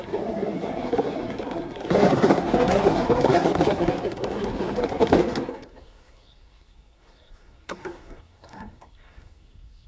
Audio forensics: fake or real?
fake